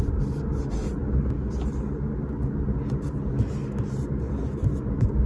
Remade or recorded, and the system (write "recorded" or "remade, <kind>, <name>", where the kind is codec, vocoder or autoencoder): recorded